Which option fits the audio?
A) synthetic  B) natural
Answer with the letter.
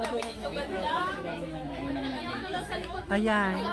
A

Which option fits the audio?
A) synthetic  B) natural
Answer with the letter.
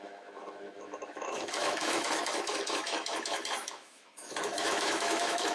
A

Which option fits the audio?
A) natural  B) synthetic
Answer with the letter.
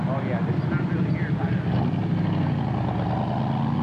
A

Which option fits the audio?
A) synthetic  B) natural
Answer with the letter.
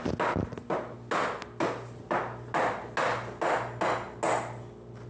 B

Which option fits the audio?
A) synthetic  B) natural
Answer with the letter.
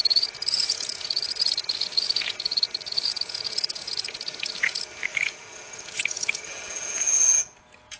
A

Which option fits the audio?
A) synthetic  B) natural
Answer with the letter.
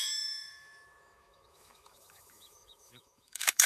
A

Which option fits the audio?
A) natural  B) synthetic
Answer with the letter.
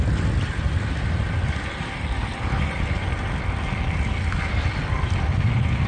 A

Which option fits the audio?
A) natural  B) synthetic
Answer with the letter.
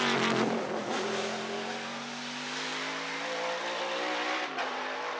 A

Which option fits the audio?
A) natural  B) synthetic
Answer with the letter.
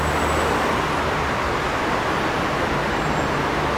A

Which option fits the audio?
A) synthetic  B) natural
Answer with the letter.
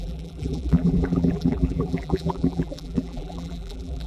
A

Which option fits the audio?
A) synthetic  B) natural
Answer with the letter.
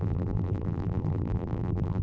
A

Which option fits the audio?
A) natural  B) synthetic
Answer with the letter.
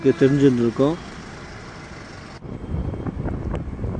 A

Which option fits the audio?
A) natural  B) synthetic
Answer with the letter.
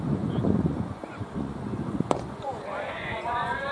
B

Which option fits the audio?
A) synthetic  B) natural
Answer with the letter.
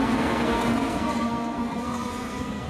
A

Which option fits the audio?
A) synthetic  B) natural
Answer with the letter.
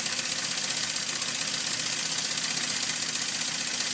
B